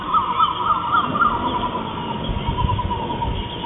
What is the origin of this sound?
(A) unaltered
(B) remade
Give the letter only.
A